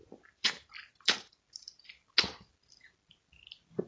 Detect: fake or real real